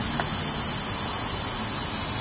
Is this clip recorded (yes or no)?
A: yes